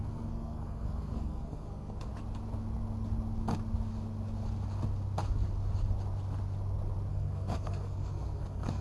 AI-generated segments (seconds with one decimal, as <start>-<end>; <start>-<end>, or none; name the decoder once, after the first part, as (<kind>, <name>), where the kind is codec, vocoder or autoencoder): 0.0-2.1 (codec, SNAC); 7.1-8.8